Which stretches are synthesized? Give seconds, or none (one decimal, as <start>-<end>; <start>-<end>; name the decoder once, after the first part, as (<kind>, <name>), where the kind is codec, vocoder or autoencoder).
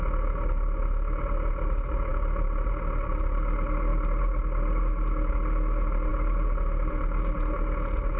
none